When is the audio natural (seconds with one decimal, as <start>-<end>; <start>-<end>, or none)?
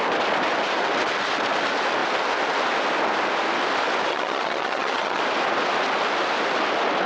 0.0-4.1; 5.2-7.1